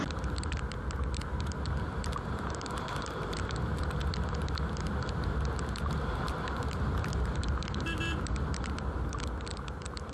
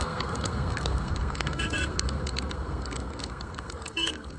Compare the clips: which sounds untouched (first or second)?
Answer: first